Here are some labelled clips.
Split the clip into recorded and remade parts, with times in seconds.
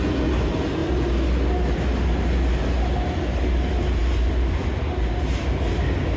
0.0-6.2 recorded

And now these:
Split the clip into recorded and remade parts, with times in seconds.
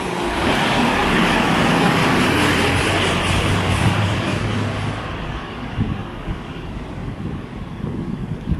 0.0-2.0 remade; 2.0-3.4 recorded; 3.4-8.6 remade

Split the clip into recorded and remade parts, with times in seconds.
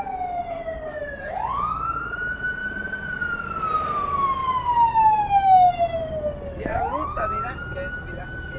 0.0-4.4 recorded; 4.4-5.7 remade; 5.7-8.6 recorded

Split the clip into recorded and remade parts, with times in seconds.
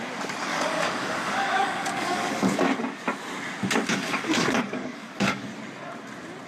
0.0-0.5 recorded; 0.5-2.6 remade; 2.6-3.9 recorded; 3.9-5.5 remade; 5.5-6.5 recorded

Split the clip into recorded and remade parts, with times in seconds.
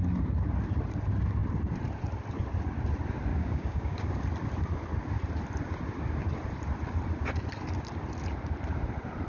0.0-3.3 recorded; 3.3-4.1 remade; 4.1-9.3 recorded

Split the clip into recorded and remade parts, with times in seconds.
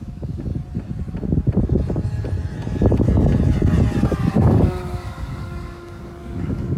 0.0-0.5 remade; 0.5-4.3 recorded; 4.3-6.8 remade